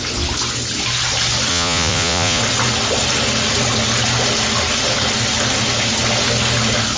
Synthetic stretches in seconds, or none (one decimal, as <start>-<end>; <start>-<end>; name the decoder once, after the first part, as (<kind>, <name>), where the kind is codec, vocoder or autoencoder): 1.5-2.4 (vocoder, Vocos)